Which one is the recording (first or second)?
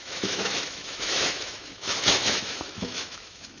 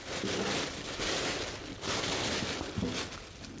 second